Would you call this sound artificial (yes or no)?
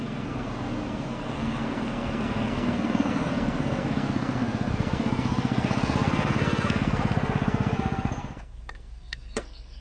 yes